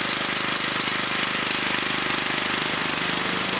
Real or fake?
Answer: real